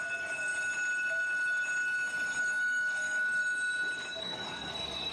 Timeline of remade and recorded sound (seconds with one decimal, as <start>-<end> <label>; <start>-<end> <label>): 0.0-0.5 remade; 0.5-2.4 recorded; 2.4-3.4 remade; 3.4-4.2 recorded; 4.2-5.1 remade